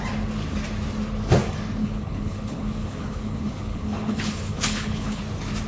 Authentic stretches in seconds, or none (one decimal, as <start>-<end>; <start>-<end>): 0.0-1.8; 5.2-5.7